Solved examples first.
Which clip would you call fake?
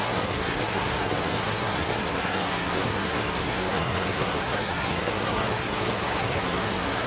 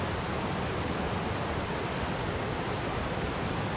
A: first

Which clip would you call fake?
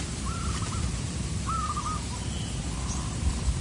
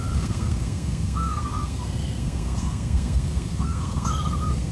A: second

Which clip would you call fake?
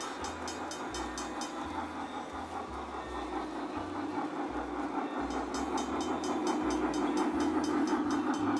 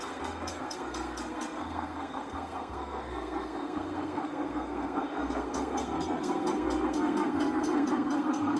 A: second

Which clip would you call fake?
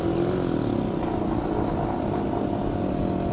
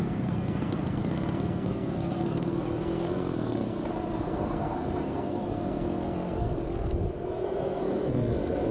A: second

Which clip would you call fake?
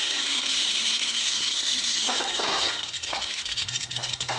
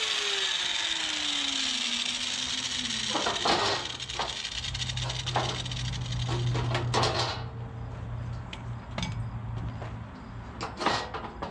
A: first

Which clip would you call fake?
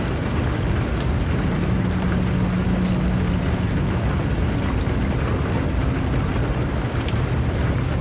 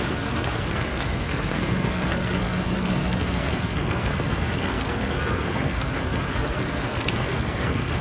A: second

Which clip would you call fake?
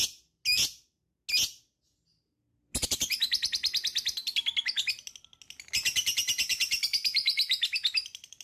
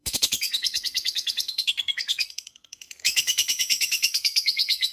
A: second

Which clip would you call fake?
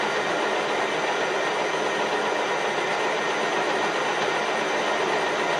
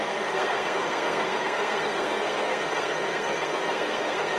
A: second